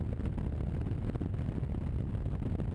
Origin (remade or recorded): recorded